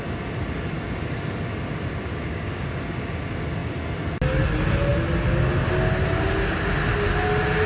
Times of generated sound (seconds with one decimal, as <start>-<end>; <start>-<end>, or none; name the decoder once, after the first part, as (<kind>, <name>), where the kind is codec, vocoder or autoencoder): 2.1-2.7 (codec, DAC)

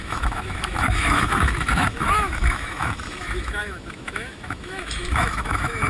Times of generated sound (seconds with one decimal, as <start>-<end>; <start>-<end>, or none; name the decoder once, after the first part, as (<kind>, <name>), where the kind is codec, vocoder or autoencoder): 0.0-5.9 (autoencoder, DAC-VAE)

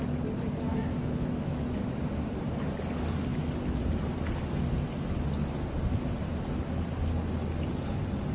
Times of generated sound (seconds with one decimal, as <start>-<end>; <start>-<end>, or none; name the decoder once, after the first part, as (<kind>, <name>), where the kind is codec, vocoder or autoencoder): 0.7-2.3 (autoencoder, DAC-VAE)